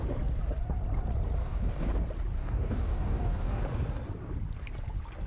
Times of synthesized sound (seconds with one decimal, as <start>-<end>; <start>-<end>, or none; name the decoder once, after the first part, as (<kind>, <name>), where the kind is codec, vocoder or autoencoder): 1.4-1.9 (codec, DAC); 2.4-3.6